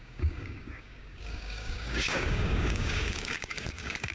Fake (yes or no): yes